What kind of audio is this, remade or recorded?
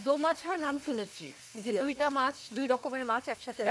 remade